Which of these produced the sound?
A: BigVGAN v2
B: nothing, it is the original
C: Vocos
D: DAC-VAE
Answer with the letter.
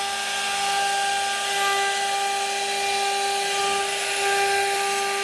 B